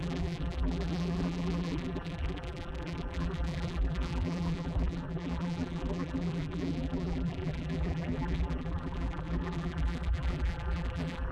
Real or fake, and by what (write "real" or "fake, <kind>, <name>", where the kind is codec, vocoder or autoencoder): fake, vocoder, BigVGAN v2